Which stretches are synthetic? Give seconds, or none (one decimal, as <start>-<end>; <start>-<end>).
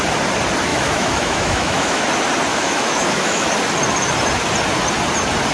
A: 0.7-2.0; 2.5-3.5